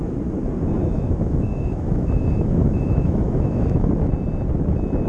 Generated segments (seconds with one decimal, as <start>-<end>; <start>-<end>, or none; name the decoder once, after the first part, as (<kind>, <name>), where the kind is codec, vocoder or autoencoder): 0.8-3.9 (autoencoder, DAC-VAE)